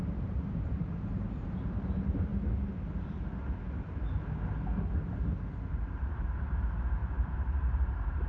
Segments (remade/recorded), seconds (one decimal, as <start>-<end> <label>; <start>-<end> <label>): 0.0-2.3 remade; 2.3-5.7 recorded; 5.7-8.3 remade